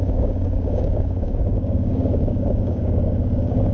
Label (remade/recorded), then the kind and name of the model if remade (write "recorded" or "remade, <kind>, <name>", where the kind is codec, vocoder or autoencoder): remade, codec, DAC